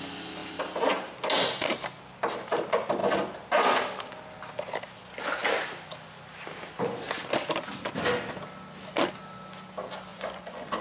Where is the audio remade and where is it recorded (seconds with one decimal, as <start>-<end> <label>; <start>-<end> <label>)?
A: 0.0-10.1 recorded; 10.1-10.8 remade